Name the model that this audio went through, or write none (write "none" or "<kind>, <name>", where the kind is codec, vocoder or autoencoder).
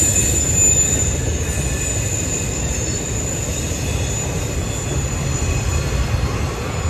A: none